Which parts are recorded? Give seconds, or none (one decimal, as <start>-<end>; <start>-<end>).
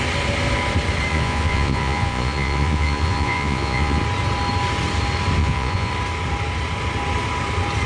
0.0-1.1; 4.0-5.4; 5.9-7.9